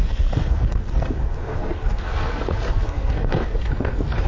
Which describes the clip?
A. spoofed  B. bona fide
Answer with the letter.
A